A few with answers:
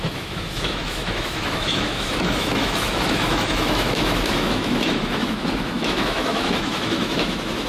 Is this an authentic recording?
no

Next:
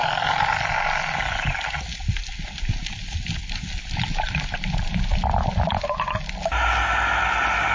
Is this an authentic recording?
yes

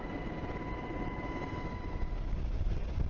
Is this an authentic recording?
yes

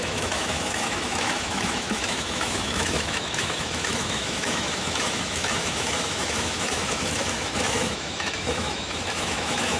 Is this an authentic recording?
no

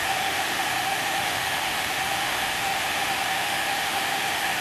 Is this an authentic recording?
no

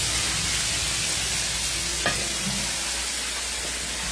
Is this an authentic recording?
yes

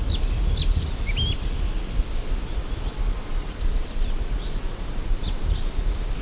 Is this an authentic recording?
yes